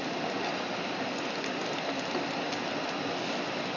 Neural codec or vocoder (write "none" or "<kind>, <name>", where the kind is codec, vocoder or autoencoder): none